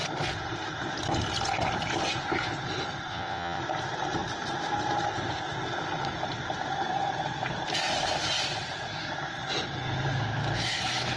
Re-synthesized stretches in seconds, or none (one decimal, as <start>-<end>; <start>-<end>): 3.1-3.6